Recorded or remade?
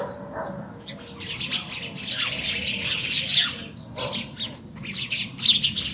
recorded